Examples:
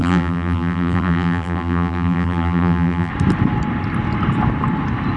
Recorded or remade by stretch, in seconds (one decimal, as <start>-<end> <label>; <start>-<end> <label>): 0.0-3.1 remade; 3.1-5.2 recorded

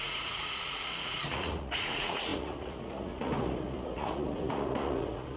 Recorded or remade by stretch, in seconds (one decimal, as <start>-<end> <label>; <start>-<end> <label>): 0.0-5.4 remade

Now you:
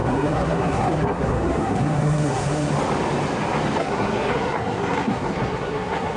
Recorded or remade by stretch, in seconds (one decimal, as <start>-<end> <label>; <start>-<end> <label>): 0.0-2.7 remade; 2.7-3.8 recorded; 3.8-6.2 remade

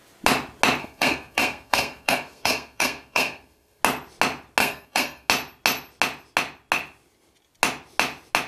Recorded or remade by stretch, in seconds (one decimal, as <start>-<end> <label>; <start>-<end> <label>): 0.0-0.8 recorded; 0.8-3.8 remade; 3.8-4.6 recorded; 4.6-5.3 remade; 5.3-8.5 recorded

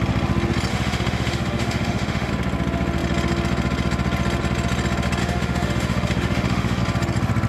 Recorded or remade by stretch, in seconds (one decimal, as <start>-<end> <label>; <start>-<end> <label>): 0.0-0.7 recorded; 0.7-2.3 remade; 2.3-5.2 recorded; 5.2-6.8 remade; 6.8-7.5 recorded

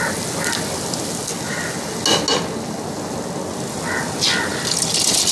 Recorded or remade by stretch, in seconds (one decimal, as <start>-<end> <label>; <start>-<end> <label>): 0.0-5.3 recorded

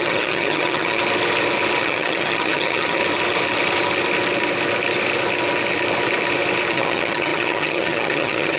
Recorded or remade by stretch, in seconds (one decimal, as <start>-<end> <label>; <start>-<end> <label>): 0.0-1.0 remade; 1.0-1.8 recorded; 1.8-3.0 remade; 3.0-6.7 recorded; 6.7-8.6 remade

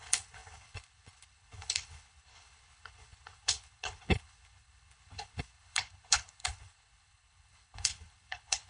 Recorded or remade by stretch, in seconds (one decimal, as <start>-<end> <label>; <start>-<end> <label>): 0.0-8.7 remade